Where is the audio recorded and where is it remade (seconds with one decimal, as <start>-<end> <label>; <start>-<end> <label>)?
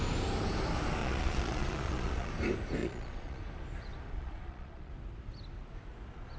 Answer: 0.0-1.0 recorded; 1.0-2.3 remade; 2.3-2.8 recorded; 2.8-3.4 remade; 3.4-4.1 recorded; 4.1-4.9 remade; 4.9-6.4 recorded